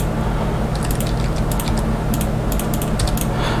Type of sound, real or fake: real